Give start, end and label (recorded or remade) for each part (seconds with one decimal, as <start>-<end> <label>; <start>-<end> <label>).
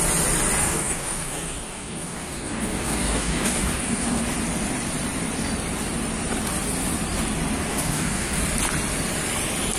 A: 0.0-0.6 recorded; 0.6-4.2 remade; 4.2-7.7 recorded; 7.7-8.4 remade; 8.4-9.8 recorded